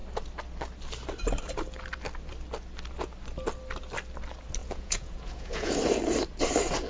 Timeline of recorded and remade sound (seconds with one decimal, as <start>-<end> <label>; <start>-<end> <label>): 0.0-4.6 recorded; 4.6-5.7 remade; 5.7-6.9 recorded